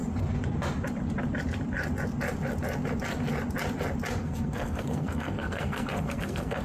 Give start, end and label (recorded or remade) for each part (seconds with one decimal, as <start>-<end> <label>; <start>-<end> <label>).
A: 0.0-4.2 recorded; 4.2-6.6 remade